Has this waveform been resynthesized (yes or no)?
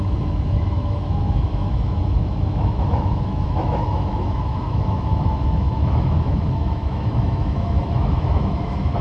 yes